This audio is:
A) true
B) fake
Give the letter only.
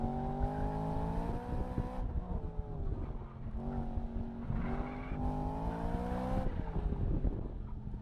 A